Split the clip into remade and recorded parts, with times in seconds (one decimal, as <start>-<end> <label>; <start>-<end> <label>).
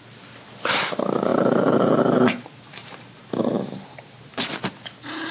0.0-1.3 recorded; 1.3-4.5 remade; 4.5-5.3 recorded